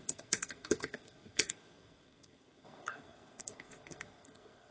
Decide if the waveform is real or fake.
fake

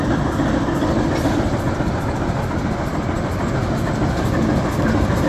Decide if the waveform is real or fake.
real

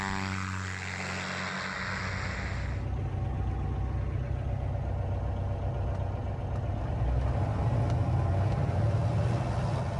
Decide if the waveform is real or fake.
real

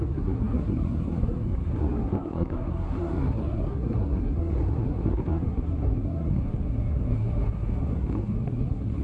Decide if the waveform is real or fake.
fake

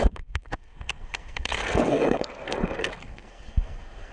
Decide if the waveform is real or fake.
fake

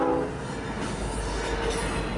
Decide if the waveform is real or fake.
real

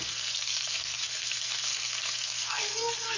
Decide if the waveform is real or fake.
fake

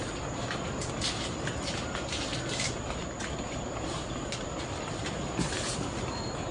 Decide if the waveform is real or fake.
real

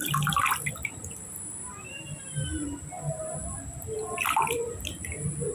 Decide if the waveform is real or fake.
real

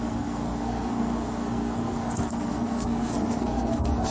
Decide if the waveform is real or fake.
fake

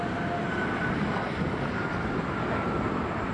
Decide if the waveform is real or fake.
real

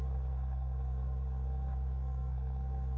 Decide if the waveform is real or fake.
fake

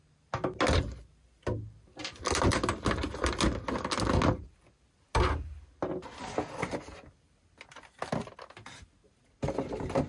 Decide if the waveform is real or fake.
real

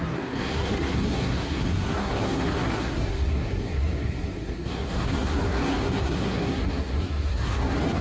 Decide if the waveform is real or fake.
fake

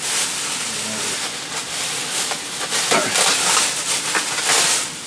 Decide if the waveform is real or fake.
real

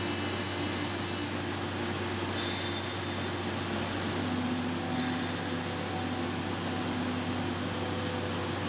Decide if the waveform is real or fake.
real